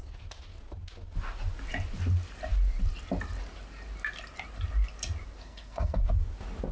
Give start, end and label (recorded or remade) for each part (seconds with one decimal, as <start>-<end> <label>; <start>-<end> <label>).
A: 0.0-5.4 recorded; 5.4-6.0 remade; 6.0-6.7 recorded